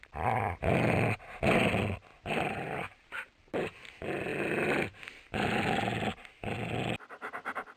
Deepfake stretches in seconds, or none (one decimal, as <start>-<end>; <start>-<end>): 2.1-3.9